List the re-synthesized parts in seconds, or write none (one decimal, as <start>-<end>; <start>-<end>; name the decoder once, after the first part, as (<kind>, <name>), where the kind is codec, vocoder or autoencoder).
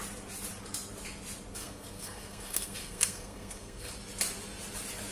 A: 1.6-3.9 (codec, SNAC)